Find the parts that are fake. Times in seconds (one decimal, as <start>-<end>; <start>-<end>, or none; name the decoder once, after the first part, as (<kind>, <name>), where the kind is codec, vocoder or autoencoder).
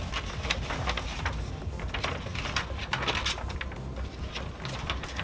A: none